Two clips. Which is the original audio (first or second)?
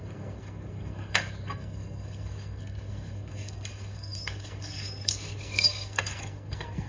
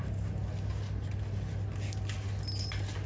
second